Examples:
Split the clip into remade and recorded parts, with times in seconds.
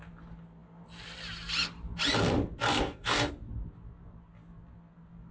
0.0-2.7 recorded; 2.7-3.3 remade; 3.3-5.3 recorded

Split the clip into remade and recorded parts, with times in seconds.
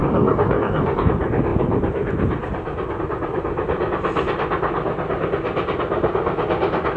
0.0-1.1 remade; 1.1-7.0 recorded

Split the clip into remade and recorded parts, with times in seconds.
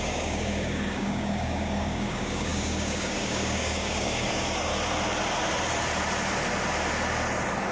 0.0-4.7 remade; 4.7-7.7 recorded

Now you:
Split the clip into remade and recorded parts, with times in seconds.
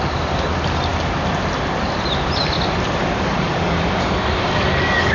0.0-3.0 recorded; 3.0-5.1 remade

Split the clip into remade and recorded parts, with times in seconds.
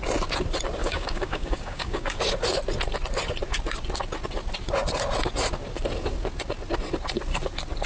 0.0-0.8 recorded; 0.8-2.2 remade; 2.2-7.9 recorded